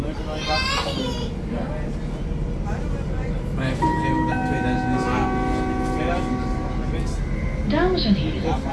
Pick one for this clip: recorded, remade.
recorded